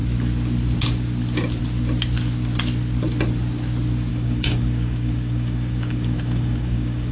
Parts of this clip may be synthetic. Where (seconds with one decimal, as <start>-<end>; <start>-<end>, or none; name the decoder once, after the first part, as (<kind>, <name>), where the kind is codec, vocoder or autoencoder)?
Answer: 4.1-7.1 (codec, DAC)